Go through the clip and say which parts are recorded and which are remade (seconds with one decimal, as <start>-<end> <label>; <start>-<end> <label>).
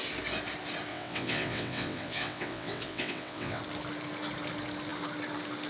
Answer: 0.0-0.9 recorded; 0.9-3.6 remade; 3.6-5.7 recorded